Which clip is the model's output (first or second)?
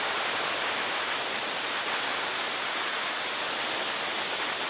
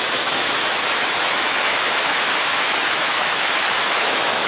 second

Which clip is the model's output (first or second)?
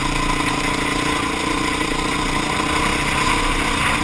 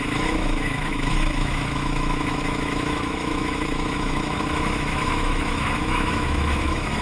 second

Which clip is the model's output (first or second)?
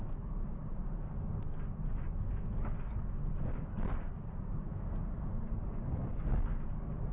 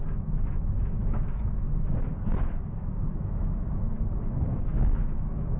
second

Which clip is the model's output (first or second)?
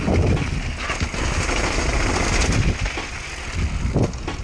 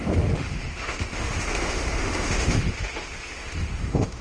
second